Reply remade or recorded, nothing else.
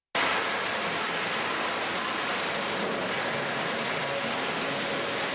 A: recorded